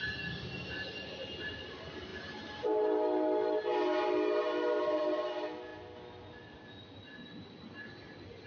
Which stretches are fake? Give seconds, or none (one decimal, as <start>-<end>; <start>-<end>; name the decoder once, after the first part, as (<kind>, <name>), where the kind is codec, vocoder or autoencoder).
none